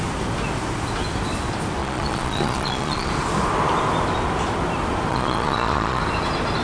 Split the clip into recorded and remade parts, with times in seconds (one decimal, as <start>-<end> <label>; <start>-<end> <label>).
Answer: 0.0-1.8 recorded; 1.8-3.1 remade; 3.1-5.1 recorded; 5.1-6.0 remade; 6.0-6.6 recorded